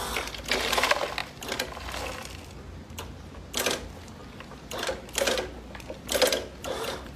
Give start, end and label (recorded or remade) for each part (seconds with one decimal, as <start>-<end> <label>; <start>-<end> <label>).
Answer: 0.0-7.2 recorded